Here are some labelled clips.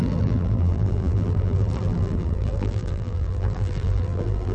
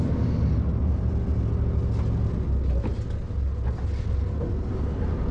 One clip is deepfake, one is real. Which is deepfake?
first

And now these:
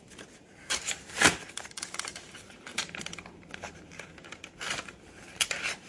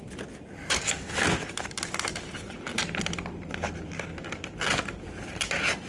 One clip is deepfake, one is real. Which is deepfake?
first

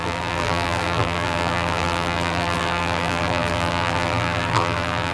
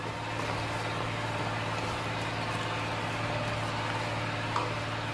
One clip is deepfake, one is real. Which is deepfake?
first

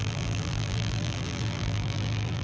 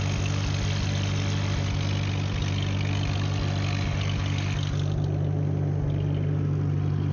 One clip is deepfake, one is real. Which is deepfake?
first